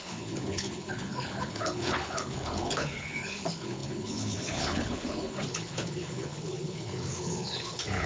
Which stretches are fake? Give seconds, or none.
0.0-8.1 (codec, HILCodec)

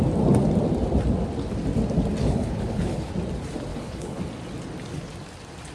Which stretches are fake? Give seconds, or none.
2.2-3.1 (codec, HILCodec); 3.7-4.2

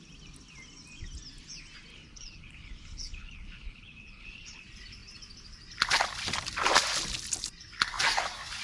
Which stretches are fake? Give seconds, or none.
1.9-4.6 (codec, HILCodec)

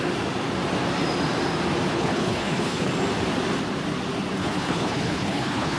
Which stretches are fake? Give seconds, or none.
1.9-2.9 (codec, HILCodec); 4.4-5.8

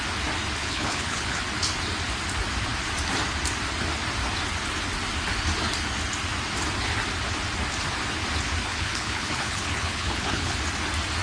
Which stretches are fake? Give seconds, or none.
0.6-1.4 (codec, HILCodec); 8.7-10.6

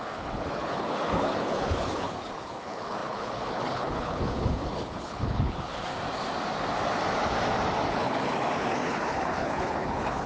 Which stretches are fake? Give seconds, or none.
0.0-5.9 (codec, HILCodec); 7.9-10.3